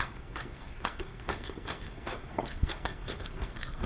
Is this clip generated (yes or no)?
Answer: yes